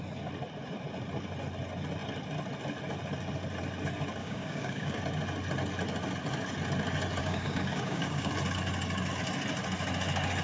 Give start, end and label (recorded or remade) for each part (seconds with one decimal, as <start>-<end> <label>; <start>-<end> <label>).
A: 0.0-4.2 recorded; 4.2-5.0 remade; 5.0-7.2 recorded; 7.2-8.3 remade; 8.3-10.4 recorded